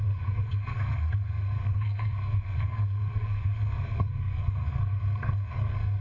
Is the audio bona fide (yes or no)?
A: no